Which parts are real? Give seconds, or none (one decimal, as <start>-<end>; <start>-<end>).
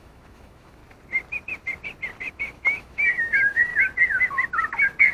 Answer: 0.8-2.3; 3.7-5.1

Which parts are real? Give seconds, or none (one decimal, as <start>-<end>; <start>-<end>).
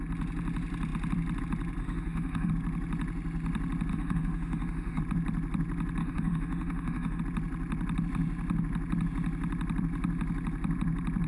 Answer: 0.0-1.8; 2.5-3.9; 5.0-6.0; 7.2-11.3